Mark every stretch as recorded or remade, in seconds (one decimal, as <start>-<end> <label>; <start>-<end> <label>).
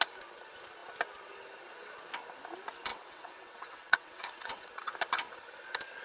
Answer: 0.0-2.9 recorded; 2.9-4.9 remade; 4.9-6.0 recorded